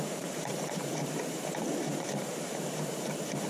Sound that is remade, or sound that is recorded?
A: remade